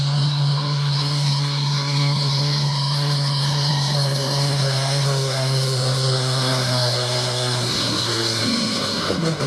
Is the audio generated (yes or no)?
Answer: yes